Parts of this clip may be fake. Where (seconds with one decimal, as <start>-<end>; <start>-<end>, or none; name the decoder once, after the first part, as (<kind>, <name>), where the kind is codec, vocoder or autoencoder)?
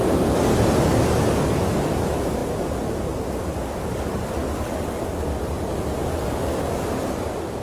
none